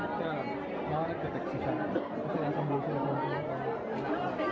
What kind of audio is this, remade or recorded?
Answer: recorded